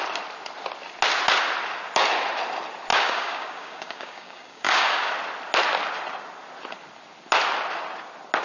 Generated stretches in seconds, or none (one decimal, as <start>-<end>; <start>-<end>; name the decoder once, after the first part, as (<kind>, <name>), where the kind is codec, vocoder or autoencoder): 2.9-5.1 (codec, DAC)

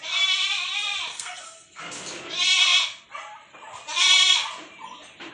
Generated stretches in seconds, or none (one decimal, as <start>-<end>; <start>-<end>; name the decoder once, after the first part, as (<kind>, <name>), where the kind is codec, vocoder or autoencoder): 1.1-1.8 (codec, SNAC)

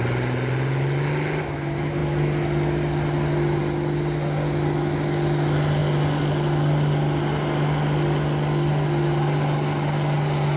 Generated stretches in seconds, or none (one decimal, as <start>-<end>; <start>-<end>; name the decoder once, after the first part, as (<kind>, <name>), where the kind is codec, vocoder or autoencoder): none

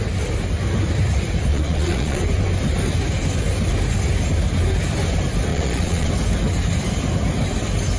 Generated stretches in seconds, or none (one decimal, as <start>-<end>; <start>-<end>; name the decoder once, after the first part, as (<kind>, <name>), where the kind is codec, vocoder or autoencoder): 1.5-2.2 (vocoder, Vocos); 5.5-6.1

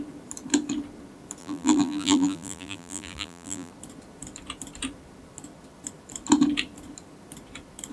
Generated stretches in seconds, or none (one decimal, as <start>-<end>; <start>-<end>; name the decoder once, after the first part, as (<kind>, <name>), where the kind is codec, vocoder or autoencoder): 1.4-3.7 (vocoder, BigVGAN v2)

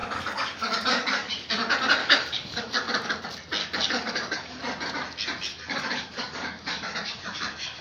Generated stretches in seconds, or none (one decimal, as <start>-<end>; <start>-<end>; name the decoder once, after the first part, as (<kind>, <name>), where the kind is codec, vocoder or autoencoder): 0.0-1.5 (codec, DAC); 2.0-3.2; 3.6-4.6; 5.5-7.8